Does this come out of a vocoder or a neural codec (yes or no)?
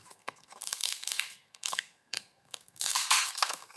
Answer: yes